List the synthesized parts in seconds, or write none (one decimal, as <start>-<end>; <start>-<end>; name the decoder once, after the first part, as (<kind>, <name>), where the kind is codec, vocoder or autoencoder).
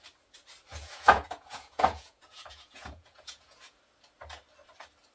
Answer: 0.7-3.8 (vocoder, Vocos)